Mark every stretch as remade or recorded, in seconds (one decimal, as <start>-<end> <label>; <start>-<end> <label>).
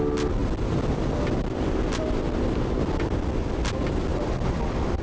0.0-5.0 recorded